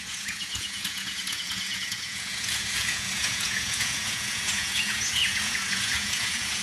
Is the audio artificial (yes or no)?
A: yes